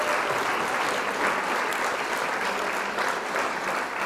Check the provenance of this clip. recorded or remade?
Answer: recorded